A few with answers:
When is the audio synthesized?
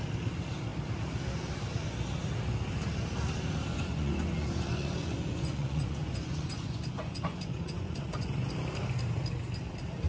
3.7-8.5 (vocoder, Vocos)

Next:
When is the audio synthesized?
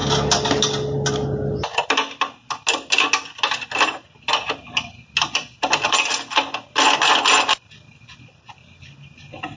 none